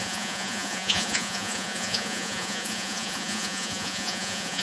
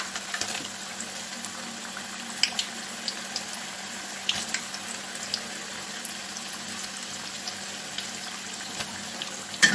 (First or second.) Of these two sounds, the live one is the second